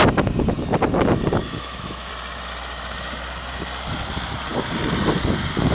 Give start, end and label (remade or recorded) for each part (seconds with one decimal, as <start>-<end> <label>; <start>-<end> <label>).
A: 0.0-1.4 recorded; 1.4-2.1 remade; 2.1-5.7 recorded